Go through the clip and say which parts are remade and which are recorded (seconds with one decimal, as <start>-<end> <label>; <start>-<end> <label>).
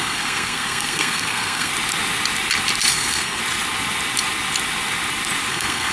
0.0-1.7 remade; 1.7-2.9 recorded; 2.9-3.4 remade; 3.4-5.5 recorded; 5.5-5.9 remade